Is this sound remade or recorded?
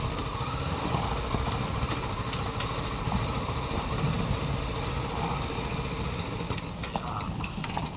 recorded